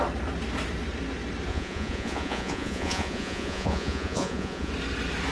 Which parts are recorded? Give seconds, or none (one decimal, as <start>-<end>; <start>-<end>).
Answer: 0.0-1.5; 4.7-5.3